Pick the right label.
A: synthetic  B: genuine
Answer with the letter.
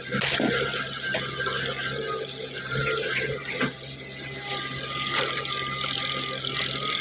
B